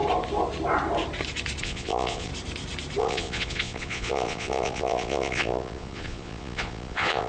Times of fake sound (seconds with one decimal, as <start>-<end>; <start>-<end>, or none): 1.6-2.3; 3.0-7.3